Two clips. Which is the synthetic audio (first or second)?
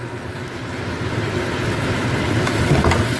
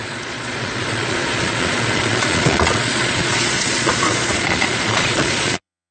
second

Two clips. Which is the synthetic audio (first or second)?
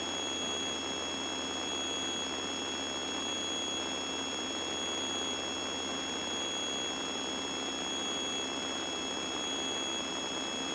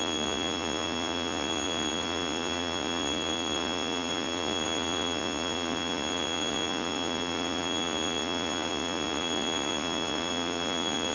second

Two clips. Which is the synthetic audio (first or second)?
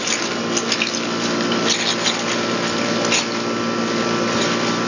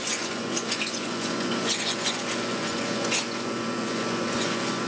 second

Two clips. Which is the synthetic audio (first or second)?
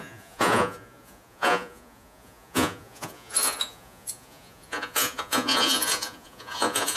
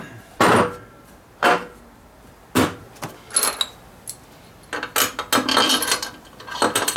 first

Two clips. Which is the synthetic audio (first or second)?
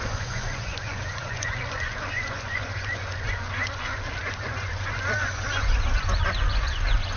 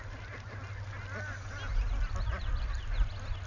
first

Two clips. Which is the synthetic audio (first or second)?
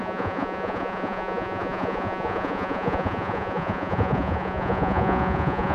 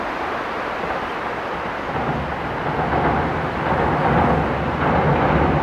first